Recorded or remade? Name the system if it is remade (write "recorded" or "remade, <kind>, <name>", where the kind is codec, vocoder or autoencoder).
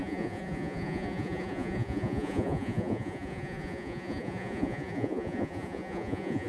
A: remade, vocoder, Vocos